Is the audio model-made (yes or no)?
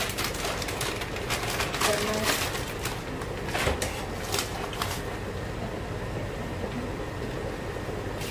no